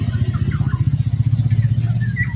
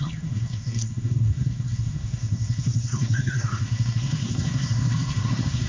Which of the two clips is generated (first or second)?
second